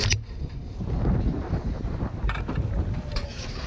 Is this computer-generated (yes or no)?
yes